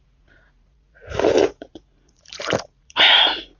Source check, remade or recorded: remade